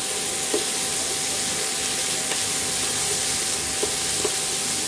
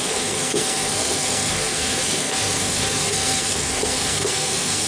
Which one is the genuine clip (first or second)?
first